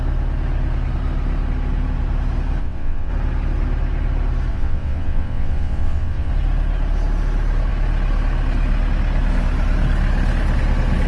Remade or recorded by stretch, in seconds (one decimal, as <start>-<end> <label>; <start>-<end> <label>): 0.0-2.6 recorded; 2.6-3.1 remade; 3.1-4.5 recorded; 4.5-6.3 remade; 6.3-11.1 recorded